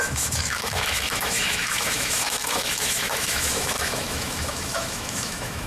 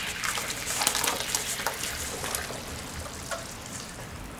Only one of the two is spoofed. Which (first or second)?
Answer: first